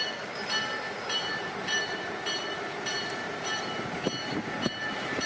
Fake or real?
fake